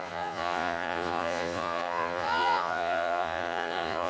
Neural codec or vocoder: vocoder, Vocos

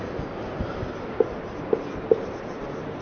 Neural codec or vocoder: none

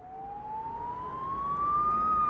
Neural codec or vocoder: none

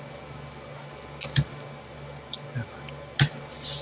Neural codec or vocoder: none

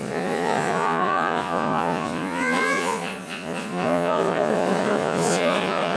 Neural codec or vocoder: vocoder, Vocos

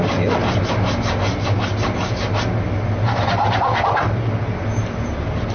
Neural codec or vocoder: none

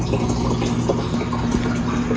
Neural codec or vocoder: none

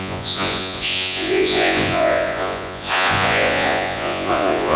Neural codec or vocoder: vocoder, Vocos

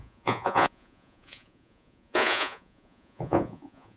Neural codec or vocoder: vocoder, Vocos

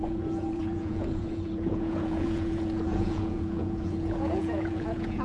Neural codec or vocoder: vocoder, Vocos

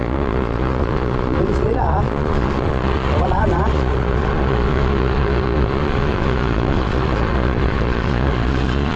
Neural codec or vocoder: vocoder, Vocos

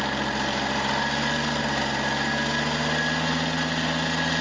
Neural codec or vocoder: none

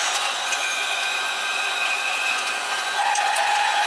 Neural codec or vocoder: vocoder, Vocos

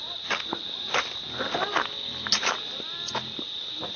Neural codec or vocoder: none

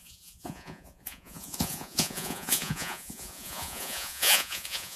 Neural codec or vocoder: vocoder, Vocos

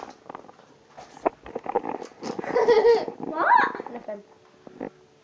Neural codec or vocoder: none